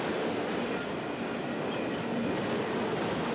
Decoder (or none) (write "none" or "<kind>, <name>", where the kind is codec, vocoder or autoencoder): none